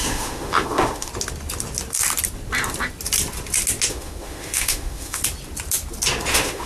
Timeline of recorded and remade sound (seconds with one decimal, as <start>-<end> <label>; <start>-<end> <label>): 0.0-1.1 remade; 1.1-3.9 recorded; 3.9-5.2 remade; 5.2-6.3 recorded; 6.3-6.7 remade

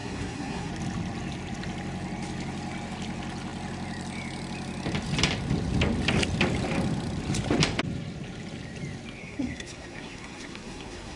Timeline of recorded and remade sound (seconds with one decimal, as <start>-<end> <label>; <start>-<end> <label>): 0.0-0.7 remade; 0.7-9.2 recorded; 9.2-11.2 remade

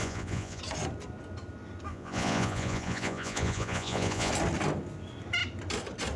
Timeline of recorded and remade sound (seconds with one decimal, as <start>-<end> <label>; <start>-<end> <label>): 0.0-0.6 remade; 0.6-1.9 recorded; 1.9-4.3 remade; 4.3-6.2 recorded

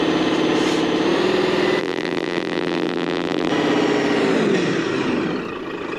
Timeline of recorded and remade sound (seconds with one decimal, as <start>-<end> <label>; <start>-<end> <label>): 0.0-1.8 recorded; 1.8-3.5 remade; 3.5-6.0 recorded

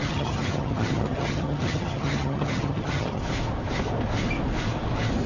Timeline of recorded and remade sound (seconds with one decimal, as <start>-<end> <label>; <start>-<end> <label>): 0.0-3.2 remade; 3.2-5.3 recorded

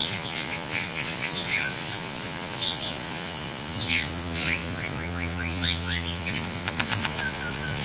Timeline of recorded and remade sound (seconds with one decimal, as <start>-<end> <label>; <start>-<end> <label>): 0.0-7.8 remade